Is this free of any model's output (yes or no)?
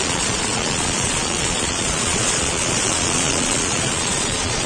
no